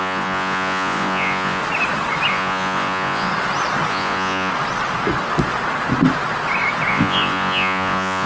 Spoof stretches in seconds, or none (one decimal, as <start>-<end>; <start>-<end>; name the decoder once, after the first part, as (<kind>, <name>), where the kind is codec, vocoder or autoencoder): 0.0-1.6 (vocoder, Vocos); 2.3-3.3; 3.9-4.5; 6.9-8.3